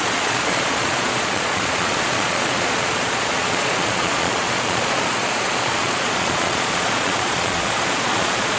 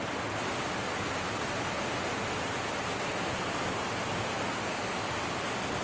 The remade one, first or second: first